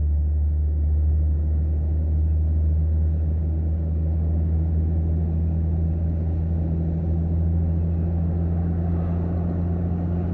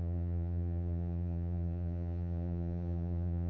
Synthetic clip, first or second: second